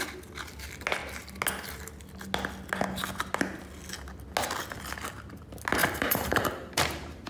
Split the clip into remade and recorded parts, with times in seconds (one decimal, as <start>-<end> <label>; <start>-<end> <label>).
0.0-5.8 recorded; 5.8-7.3 remade